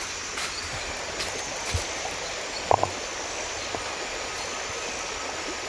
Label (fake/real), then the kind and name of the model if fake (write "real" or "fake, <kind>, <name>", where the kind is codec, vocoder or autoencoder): real